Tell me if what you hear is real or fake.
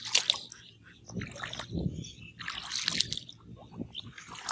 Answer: real